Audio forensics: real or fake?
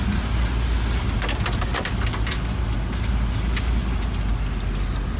real